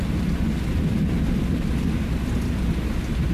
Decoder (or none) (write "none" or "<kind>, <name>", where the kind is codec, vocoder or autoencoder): none